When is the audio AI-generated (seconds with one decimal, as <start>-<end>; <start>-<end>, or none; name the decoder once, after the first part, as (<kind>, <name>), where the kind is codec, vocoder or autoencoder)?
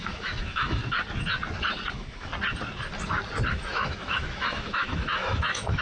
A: 0.0-0.8 (autoencoder, DAC-VAE); 1.9-2.3; 3.5-5.8